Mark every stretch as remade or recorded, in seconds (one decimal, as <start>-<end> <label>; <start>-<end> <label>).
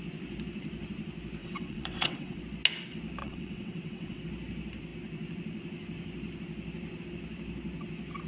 0.0-1.4 recorded; 1.4-2.4 remade; 2.4-3.2 recorded; 3.2-4.2 remade; 4.2-8.3 recorded